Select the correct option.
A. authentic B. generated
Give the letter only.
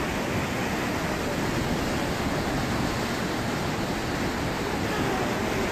A